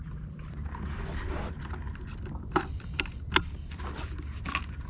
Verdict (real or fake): real